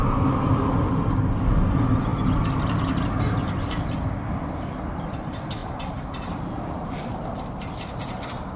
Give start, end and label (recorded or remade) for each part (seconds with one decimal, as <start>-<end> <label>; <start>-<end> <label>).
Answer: 0.0-5.6 recorded; 5.6-8.0 remade; 8.0-8.6 recorded